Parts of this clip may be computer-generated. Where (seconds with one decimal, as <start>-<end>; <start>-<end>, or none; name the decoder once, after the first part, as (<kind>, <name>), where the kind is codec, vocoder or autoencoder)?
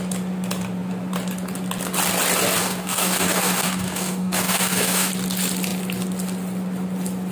2.6-5.1 (codec, DAC)